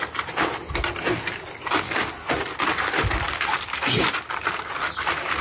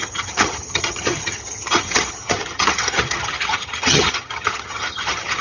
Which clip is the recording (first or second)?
first